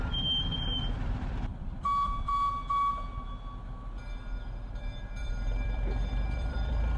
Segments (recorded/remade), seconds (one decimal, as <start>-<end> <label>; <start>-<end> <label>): 0.0-1.5 remade; 1.5-4.7 recorded; 4.7-7.0 remade